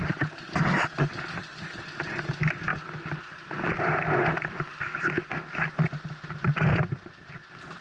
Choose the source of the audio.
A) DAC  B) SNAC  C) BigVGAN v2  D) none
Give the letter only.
D